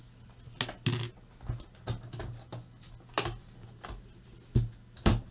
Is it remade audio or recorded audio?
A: recorded